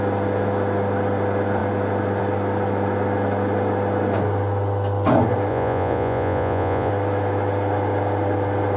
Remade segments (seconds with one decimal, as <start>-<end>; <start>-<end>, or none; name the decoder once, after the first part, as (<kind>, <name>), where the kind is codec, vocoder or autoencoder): 5.5-6.9 (vocoder, Vocos)